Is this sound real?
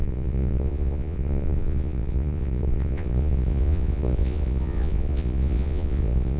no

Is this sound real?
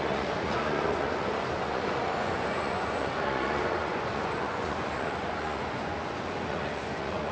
no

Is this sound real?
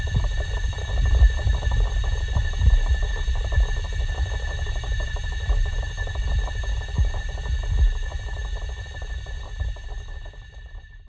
yes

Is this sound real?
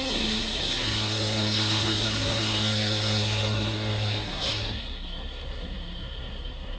no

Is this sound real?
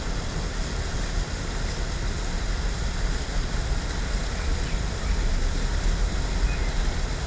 yes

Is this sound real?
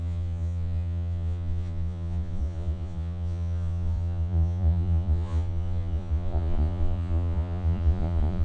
no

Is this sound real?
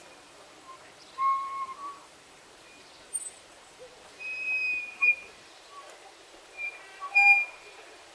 no